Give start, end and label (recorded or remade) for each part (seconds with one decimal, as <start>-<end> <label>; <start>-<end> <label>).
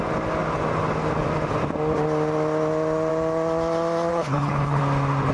0.0-4.1 recorded; 4.1-4.8 remade; 4.8-5.3 recorded